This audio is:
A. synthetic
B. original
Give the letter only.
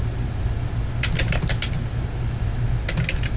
B